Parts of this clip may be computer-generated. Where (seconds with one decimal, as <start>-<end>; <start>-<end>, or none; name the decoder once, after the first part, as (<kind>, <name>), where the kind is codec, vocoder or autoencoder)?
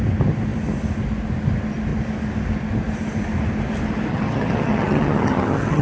4.1-5.8 (vocoder, HiFi-GAN)